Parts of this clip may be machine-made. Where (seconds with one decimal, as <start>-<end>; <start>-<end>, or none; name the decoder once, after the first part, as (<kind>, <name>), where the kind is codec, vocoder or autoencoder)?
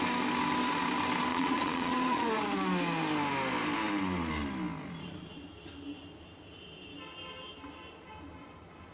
1.3-2.3 (vocoder, Vocos)